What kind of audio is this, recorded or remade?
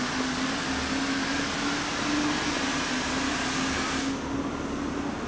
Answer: recorded